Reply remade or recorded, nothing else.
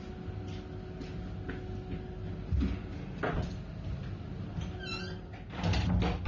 recorded